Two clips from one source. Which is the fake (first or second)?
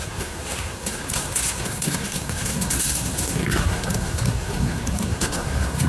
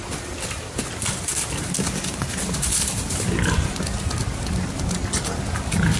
first